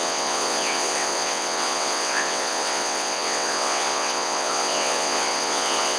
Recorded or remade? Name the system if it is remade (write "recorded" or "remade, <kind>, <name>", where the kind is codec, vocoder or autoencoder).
remade, vocoder, WaveNeXt